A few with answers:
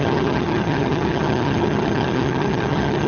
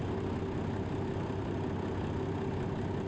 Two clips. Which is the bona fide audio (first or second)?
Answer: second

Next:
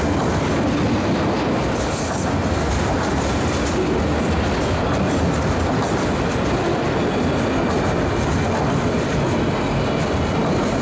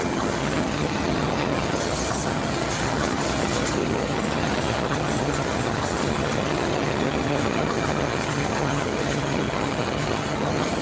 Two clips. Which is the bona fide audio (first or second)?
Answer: first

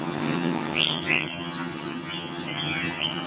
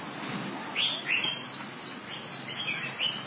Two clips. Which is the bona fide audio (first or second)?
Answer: second